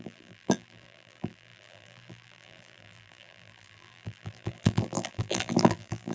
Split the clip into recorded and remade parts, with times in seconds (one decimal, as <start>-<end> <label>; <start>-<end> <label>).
0.0-6.1 remade